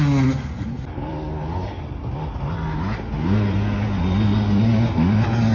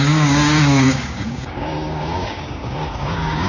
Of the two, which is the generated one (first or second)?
second